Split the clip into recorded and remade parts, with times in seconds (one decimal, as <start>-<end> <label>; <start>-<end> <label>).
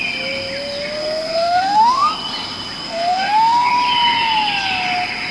0.0-1.0 recorded; 1.0-2.1 remade; 2.1-2.8 recorded; 2.8-3.7 remade; 3.7-5.3 recorded